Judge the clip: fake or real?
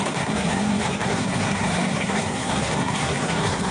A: fake